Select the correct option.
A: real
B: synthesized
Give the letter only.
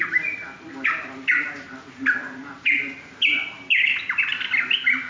A